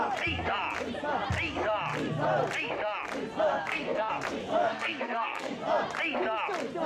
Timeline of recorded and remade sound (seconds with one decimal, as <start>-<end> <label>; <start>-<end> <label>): 0.0-3.5 recorded; 3.5-4.1 remade; 4.1-4.6 recorded; 4.6-5.5 remade; 5.5-6.9 recorded

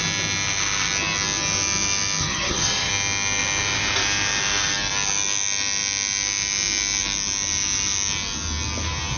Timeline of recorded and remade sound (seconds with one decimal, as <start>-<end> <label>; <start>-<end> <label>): 0.0-2.2 recorded; 2.2-2.9 remade; 2.9-9.2 recorded